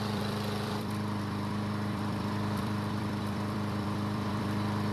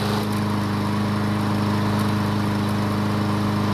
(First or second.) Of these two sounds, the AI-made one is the first